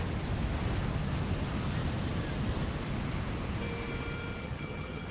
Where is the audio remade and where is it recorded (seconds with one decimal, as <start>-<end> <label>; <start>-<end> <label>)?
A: 0.0-4.4 recorded; 4.4-5.1 remade

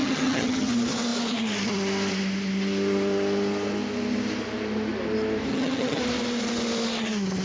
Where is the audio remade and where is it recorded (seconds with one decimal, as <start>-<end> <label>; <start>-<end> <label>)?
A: 0.0-0.7 remade; 0.7-5.5 recorded; 5.5-6.0 remade; 6.0-7.4 recorded

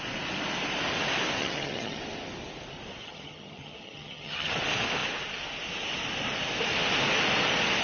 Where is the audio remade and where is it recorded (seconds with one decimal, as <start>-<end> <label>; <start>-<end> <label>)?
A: 0.0-1.4 recorded; 1.4-2.0 remade; 2.0-3.0 recorded; 3.0-4.5 remade; 4.5-7.8 recorded

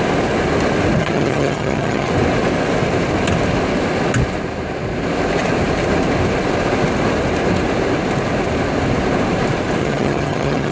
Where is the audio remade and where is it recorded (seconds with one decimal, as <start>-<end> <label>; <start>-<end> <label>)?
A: 0.0-1.0 recorded; 1.0-2.1 remade; 2.1-9.8 recorded; 9.8-10.7 remade

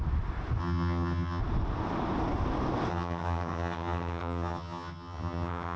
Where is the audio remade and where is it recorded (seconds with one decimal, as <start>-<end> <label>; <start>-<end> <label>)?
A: 0.0-0.6 recorded; 0.6-1.4 remade; 1.4-2.9 recorded; 2.9-5.8 remade

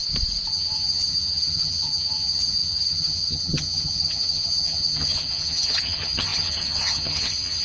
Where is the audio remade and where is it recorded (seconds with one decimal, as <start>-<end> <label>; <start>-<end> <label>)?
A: 0.0-0.5 recorded; 0.5-7.6 remade

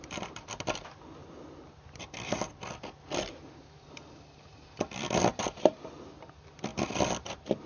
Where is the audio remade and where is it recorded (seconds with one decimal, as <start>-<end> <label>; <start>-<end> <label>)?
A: 0.0-7.7 recorded